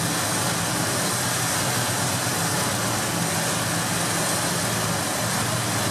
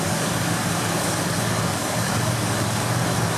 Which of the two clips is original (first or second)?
first